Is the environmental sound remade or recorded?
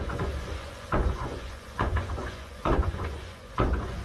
remade